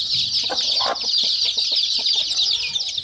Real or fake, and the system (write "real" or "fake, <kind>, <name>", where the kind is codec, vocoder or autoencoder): real